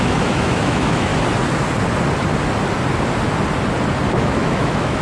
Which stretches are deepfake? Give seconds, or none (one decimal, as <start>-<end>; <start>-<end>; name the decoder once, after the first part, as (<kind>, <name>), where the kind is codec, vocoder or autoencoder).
0.0-1.1 (autoencoder, DAC-VAE); 4.1-5.0